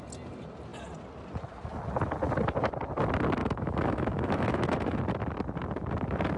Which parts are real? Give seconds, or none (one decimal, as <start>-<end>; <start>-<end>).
0.0-3.4; 5.0-6.4